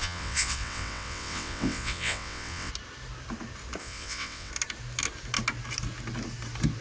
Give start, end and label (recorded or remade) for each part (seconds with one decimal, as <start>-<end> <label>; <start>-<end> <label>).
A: 0.0-2.7 remade; 2.7-3.8 recorded; 3.8-4.5 remade; 4.5-6.8 recorded